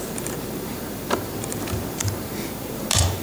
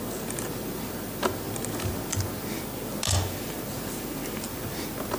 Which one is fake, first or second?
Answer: first